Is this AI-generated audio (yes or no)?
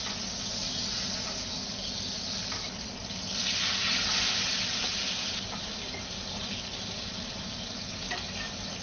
no